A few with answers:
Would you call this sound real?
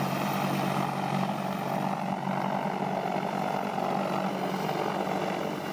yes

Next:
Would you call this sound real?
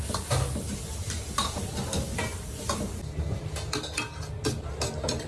yes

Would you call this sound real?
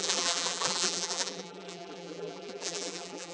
no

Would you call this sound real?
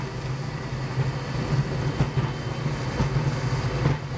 yes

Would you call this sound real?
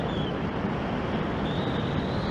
yes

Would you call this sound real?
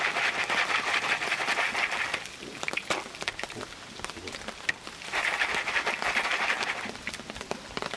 yes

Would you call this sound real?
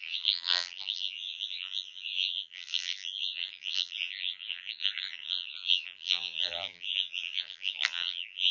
no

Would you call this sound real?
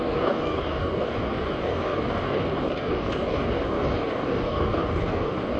no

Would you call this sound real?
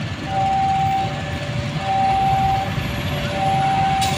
yes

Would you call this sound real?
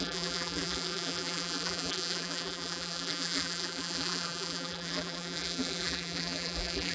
no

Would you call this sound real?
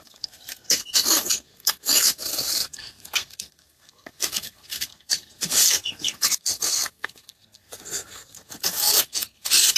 no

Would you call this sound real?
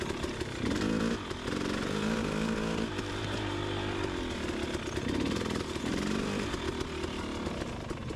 yes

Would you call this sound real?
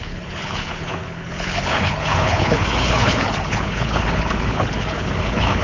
no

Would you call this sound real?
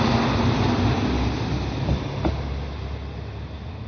yes